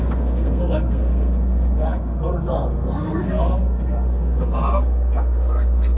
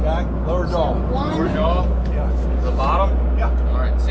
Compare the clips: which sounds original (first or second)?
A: second